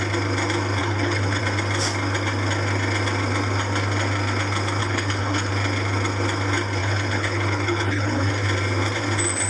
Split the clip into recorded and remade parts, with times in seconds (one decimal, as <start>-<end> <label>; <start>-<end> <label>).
0.0-0.8 recorded; 0.8-1.4 remade; 1.4-4.8 recorded; 4.8-5.5 remade; 5.5-6.8 recorded; 6.8-8.3 remade; 8.3-9.5 recorded